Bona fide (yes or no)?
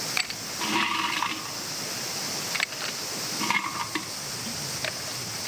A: yes